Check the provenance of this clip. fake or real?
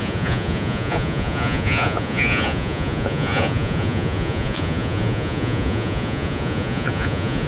fake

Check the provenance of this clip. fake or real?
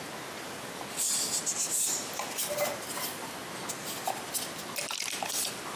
real